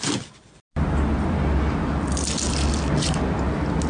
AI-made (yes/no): no